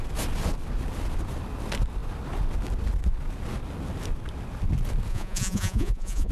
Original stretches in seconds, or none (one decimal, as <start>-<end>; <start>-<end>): 0.0-5.1